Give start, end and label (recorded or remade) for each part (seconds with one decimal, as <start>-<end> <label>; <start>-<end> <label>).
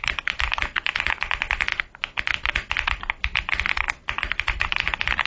0.0-5.3 recorded